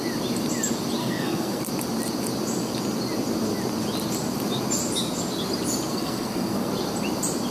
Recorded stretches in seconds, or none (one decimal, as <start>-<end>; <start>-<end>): 0.0-1.0; 1.6-5.9; 6.7-7.5